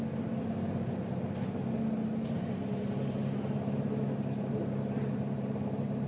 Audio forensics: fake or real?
real